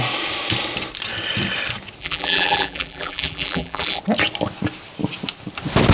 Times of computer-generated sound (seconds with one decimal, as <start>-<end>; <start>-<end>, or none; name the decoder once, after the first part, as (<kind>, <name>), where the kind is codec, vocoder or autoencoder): 2.0-4.0 (vocoder, BigVGAN v2)